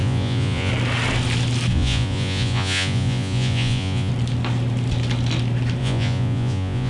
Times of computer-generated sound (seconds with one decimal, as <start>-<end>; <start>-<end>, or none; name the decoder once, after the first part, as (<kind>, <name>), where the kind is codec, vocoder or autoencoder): 0.0-0.7 (vocoder, Vocos); 1.7-4.1; 5.8-6.9